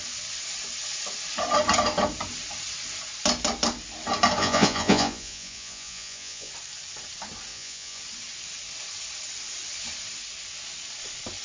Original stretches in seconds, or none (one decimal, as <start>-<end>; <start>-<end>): 0.0-4.4; 6.5-7.5; 8.0-11.4